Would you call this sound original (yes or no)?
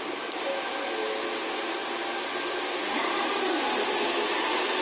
yes